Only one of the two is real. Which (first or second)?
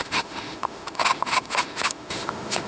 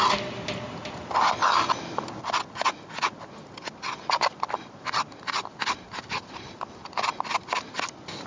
second